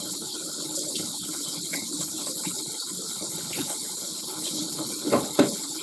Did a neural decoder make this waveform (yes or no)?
yes